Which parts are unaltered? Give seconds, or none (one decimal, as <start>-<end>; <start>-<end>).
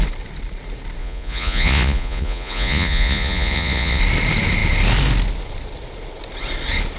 0.0-1.0; 4.0-7.0